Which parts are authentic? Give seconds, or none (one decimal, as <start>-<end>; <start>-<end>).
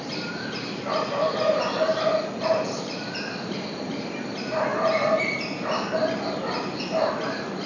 none